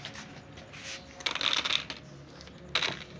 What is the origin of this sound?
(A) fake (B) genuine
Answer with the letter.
B